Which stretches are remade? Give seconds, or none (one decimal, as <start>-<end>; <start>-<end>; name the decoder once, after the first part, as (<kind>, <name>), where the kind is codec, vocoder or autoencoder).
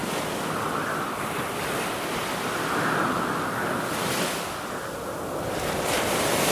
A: none